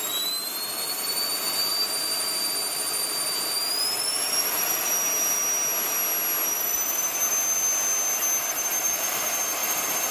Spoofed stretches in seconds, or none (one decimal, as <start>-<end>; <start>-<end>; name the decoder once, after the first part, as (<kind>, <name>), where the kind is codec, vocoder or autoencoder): 0.0-5.4 (vocoder, BigVGAN v2); 8.8-10.1